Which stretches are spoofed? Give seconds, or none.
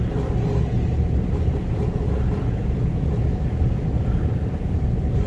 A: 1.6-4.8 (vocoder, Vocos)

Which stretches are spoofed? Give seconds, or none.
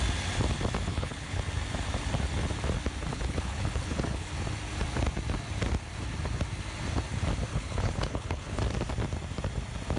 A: 0.9-1.4 (codec, HILCodec); 3.1-4.3; 7.5-8.6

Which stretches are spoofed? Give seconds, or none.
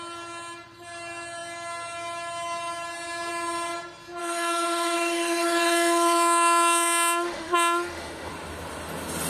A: 4.2-8.3 (autoencoder, DAC-VAE)